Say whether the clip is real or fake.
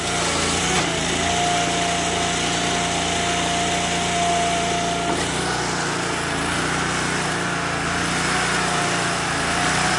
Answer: real